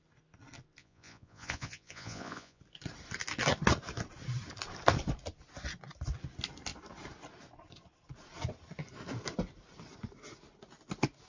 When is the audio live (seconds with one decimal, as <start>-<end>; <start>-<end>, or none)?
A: 0.0-0.8; 2.6-11.3